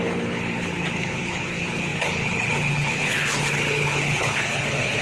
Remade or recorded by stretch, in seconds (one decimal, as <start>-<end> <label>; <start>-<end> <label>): 0.0-5.0 remade